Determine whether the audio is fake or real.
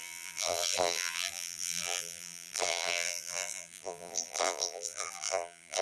fake